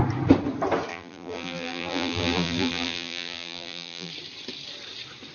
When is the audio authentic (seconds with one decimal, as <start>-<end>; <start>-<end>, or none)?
0.0-0.9; 4.1-5.3

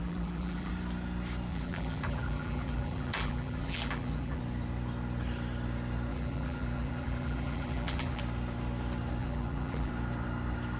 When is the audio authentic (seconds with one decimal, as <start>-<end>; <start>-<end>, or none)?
0.7-1.5; 4.4-6.1; 8.2-9.2; 9.9-10.8